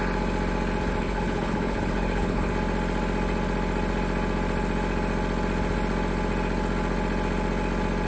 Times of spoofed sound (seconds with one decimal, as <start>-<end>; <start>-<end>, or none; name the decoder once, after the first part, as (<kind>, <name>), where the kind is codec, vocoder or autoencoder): 1.0-2.5 (codec, HILCodec)